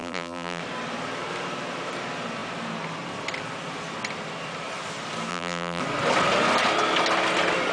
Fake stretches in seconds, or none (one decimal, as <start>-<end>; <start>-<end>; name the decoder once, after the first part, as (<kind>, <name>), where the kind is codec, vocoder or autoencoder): 0.0-0.6 (vocoder, BigVGAN v2); 5.3-5.8